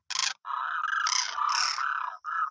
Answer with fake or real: real